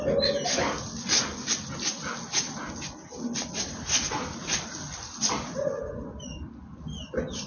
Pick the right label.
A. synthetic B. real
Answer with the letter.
B